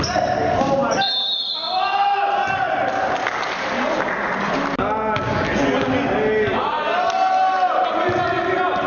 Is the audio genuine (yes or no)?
yes